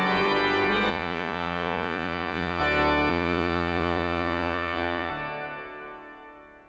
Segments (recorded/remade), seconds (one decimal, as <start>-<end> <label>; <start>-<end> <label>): 0.0-0.9 recorded; 0.9-2.6 remade; 2.6-3.1 recorded; 3.1-5.1 remade; 5.1-6.7 recorded